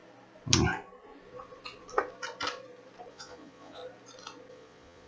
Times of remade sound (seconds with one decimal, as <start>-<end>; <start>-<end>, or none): 3.1-3.8; 4.5-5.1